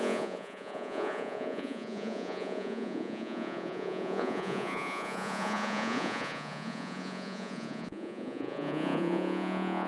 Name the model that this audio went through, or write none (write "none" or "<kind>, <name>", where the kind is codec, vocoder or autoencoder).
vocoder, Vocos